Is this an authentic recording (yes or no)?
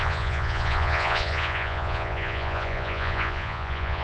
no